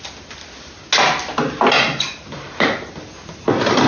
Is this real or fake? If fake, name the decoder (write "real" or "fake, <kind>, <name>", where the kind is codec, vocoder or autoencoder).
real